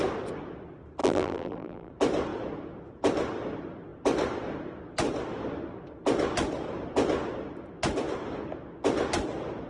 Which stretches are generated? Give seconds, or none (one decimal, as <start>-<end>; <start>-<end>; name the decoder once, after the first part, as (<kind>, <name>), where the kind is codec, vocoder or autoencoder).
1.0-1.9 (vocoder, BigVGAN v2)